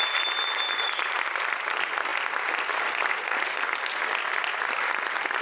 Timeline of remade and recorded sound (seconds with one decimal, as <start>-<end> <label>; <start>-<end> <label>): 0.0-5.4 recorded